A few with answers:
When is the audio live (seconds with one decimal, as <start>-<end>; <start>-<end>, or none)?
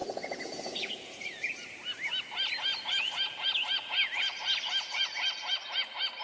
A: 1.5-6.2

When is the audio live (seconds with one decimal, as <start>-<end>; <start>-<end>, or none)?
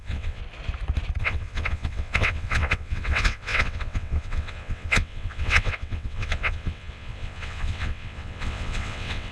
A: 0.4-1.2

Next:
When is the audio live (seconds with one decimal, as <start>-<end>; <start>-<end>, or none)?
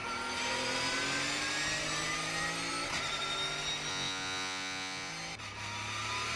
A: 0.0-3.9; 5.1-6.4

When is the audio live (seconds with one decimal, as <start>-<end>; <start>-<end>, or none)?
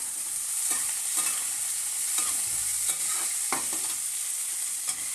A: 0.0-5.1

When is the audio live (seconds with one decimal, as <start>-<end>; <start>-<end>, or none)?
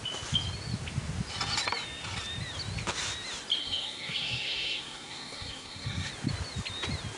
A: 0.0-3.6; 6.1-7.2